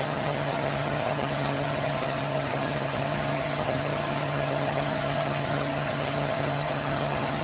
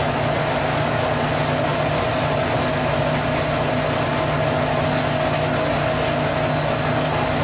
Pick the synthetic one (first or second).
first